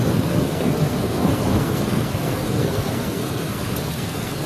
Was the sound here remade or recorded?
remade